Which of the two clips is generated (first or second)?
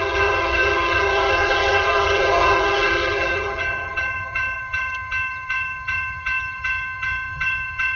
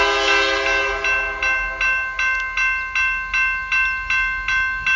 first